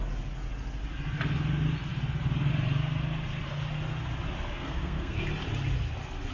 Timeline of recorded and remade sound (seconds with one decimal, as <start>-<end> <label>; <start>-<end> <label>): 0.0-4.5 recorded; 4.5-5.2 remade; 5.2-6.3 recorded